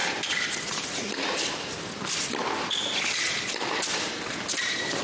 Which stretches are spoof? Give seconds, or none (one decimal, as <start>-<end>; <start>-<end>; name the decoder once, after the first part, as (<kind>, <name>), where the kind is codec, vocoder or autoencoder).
none